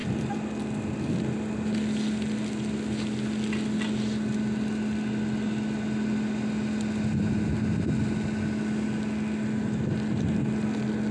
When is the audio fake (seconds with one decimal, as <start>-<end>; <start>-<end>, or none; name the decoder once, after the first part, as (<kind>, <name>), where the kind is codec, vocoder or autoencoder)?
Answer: none

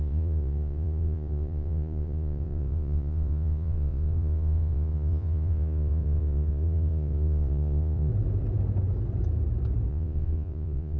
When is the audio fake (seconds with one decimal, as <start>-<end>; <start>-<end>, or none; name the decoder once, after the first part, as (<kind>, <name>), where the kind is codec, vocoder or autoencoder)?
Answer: 0.0-8.1 (vocoder, Vocos); 9.9-11.0

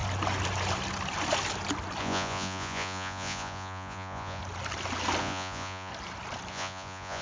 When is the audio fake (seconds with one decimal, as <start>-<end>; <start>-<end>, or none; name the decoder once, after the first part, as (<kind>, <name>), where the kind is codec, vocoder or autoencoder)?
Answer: 2.0-4.4 (vocoder, Vocos); 5.2-5.9; 6.5-7.2

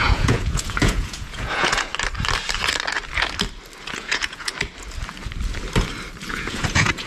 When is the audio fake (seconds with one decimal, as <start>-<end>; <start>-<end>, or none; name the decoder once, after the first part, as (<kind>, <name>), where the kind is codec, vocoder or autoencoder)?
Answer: 0.0-1.9 (vocoder, Vocos); 3.9-4.5; 6.3-7.1

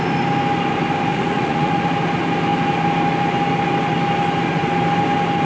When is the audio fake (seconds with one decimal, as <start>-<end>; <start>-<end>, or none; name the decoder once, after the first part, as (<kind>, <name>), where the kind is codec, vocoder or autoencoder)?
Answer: 1.1-1.8 (vocoder, Vocos)

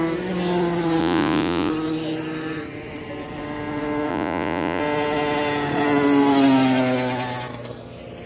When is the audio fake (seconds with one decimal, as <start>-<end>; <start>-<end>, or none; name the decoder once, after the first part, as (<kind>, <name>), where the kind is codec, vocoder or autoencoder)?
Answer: 1.0-1.7 (vocoder, Vocos); 4.1-4.8

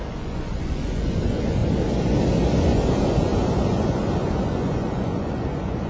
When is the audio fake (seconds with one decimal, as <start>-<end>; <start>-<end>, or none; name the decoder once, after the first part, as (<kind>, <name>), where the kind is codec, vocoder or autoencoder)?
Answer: 0.0-1.6 (vocoder, Vocos); 2.6-5.9

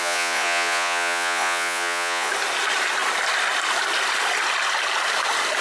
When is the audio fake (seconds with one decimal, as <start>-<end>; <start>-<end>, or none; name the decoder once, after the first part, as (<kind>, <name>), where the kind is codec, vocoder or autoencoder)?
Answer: 0.0-2.3 (vocoder, Vocos)